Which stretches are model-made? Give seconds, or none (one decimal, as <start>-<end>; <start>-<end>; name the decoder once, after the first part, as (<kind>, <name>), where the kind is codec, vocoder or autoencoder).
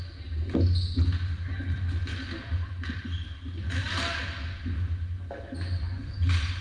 2.1-3.3 (vocoder, BigVGAN v2)